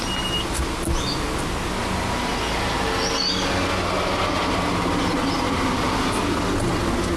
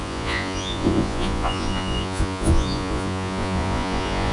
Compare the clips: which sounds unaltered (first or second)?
first